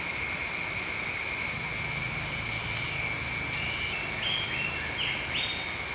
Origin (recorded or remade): recorded